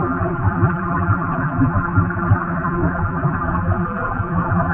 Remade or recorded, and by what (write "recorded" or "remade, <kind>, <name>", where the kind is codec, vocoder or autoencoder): remade, vocoder, BigVGAN v2